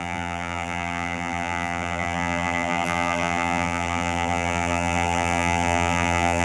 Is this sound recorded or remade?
remade